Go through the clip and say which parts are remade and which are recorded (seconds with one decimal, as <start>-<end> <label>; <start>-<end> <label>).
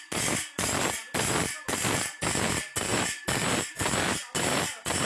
0.0-5.0 recorded